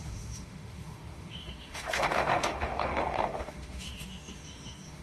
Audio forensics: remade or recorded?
remade